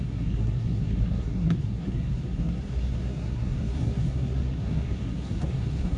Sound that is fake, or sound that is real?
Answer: fake